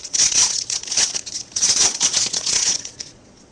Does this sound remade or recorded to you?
remade